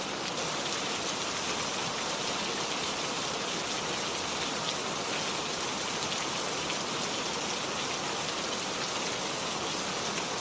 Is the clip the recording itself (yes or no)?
yes